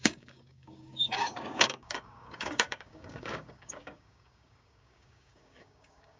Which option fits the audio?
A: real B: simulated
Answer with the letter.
B